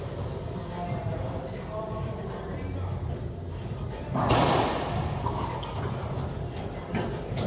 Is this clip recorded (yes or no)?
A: yes